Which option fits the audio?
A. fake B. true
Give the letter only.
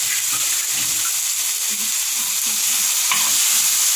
A